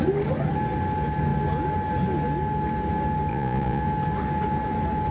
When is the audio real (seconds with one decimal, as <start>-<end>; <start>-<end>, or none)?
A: 0.0-3.3; 3.8-5.1